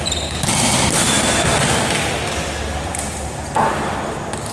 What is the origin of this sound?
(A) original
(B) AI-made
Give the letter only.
A